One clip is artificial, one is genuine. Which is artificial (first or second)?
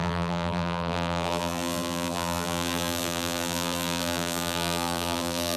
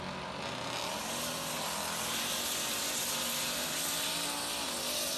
first